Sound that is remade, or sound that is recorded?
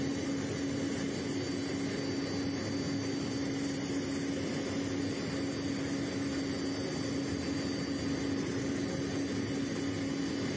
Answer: recorded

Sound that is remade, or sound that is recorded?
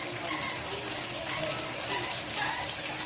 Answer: recorded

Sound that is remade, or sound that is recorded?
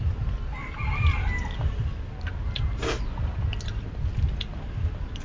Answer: recorded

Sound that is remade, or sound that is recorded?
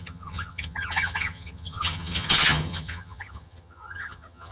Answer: remade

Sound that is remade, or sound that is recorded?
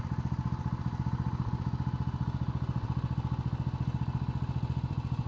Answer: recorded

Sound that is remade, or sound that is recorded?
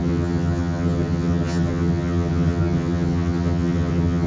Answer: remade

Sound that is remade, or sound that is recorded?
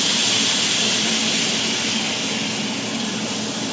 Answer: recorded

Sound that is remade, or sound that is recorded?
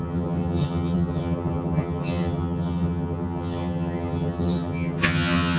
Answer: remade